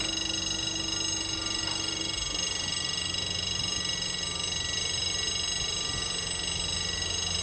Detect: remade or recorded recorded